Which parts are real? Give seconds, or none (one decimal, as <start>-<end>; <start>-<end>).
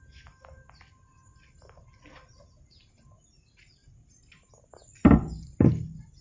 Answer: 0.0-6.2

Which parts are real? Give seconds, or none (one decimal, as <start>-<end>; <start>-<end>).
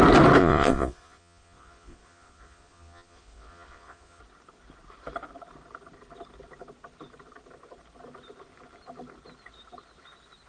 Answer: 0.0-0.4; 4.2-10.5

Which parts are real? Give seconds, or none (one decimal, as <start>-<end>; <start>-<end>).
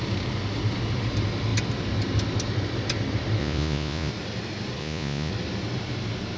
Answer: 0.0-3.4; 4.1-4.8; 5.3-6.4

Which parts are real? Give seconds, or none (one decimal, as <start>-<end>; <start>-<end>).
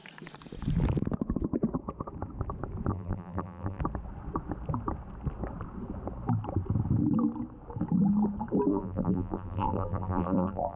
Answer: 0.0-2.9; 3.8-8.7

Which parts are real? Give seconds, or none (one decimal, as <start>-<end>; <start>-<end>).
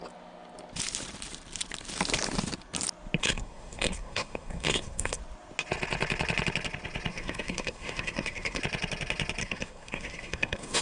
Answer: 0.0-3.2; 5.2-7.1; 8.6-9.4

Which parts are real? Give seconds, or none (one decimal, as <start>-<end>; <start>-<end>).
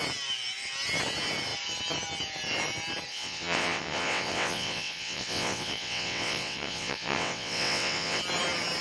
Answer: 0.0-3.1; 8.2-8.8